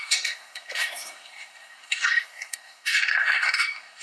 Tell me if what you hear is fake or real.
fake